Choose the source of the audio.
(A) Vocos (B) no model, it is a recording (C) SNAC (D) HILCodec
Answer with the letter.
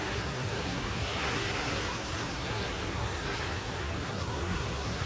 C